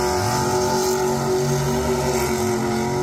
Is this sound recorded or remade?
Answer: recorded